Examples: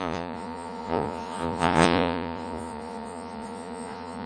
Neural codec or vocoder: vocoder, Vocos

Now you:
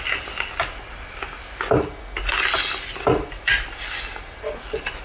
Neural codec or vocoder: none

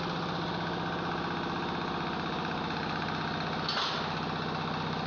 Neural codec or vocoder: none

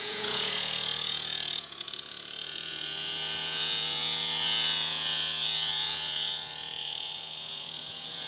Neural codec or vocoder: vocoder, Vocos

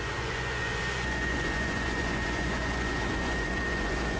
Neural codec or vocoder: vocoder, Vocos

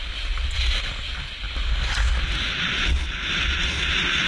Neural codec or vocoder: none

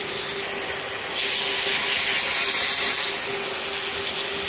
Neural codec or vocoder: none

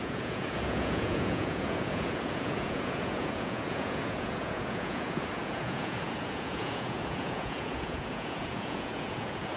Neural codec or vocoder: vocoder, Vocos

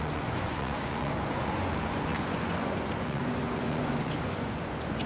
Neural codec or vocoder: vocoder, Vocos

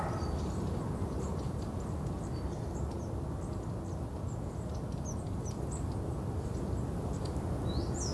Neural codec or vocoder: none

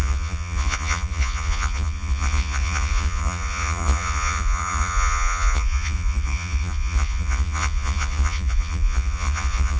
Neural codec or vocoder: vocoder, Vocos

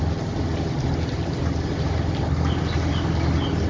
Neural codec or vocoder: none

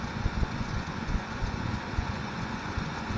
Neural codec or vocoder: vocoder, Vocos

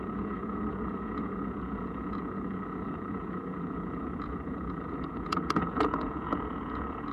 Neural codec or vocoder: vocoder, Vocos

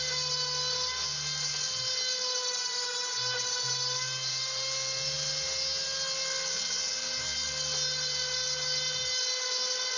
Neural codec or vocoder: none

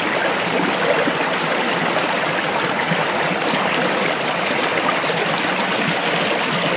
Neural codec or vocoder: none